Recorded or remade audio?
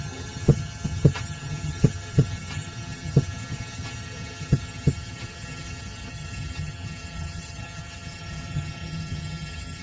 remade